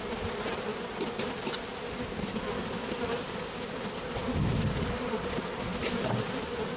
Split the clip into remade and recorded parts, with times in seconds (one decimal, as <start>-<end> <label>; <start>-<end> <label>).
0.0-6.8 recorded